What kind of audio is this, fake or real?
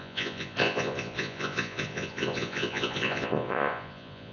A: fake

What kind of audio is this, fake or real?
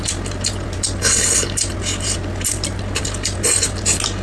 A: real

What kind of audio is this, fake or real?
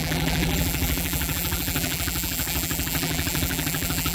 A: fake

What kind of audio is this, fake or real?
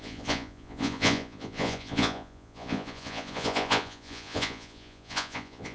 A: fake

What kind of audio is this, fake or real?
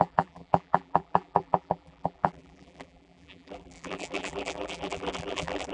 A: fake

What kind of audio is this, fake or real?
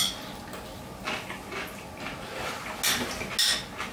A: real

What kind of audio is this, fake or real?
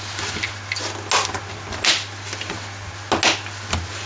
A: real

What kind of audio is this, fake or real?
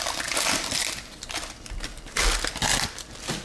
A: real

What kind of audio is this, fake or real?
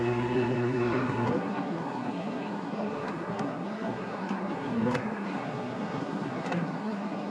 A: fake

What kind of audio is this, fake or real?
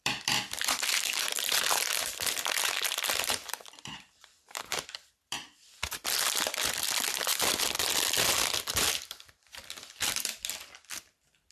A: fake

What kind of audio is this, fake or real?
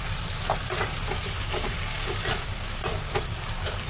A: fake